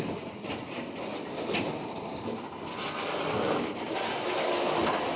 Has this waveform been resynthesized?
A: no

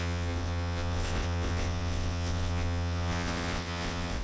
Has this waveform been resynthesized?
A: yes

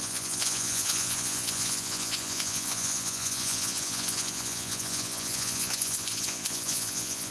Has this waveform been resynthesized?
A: yes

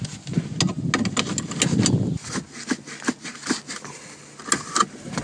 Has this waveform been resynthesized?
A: no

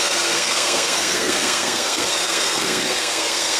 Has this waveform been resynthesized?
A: yes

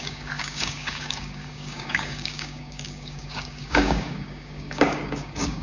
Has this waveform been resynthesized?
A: yes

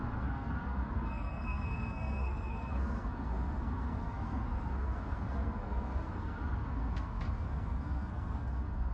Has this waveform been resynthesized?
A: yes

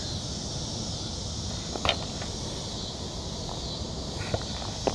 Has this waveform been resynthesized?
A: no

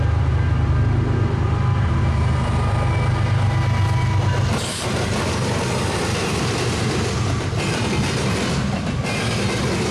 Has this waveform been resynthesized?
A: no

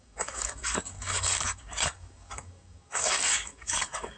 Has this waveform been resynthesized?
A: yes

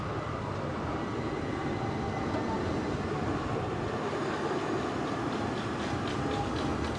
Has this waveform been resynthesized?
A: no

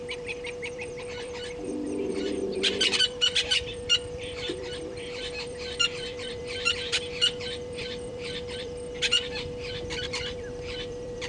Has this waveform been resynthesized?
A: yes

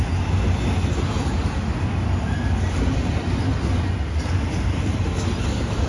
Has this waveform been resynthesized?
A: no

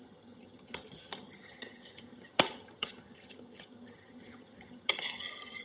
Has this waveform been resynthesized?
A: yes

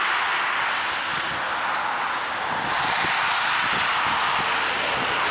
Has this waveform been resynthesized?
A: no